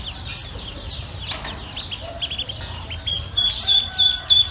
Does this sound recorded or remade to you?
recorded